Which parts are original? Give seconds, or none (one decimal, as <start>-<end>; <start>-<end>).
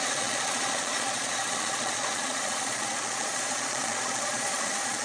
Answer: none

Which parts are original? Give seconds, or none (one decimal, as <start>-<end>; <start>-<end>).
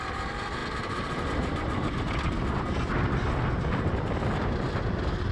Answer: 0.0-5.3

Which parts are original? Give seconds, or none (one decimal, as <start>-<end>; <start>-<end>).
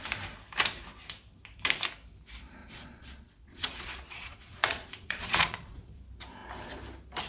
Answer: 0.0-2.6; 5.9-7.3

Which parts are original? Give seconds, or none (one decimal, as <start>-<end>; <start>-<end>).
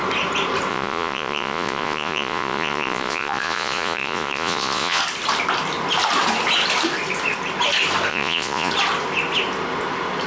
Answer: 0.0-0.7; 5.0-8.1; 8.7-10.3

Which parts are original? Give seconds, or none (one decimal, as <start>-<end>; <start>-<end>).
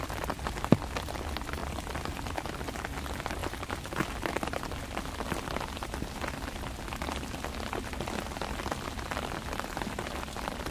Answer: 0.0-10.7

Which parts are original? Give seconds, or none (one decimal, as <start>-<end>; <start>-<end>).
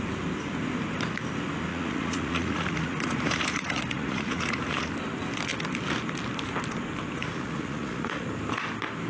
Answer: 0.0-1.7; 4.9-7.2; 8.3-9.1